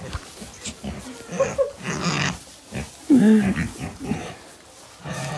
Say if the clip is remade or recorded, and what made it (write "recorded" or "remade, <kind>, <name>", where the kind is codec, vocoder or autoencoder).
recorded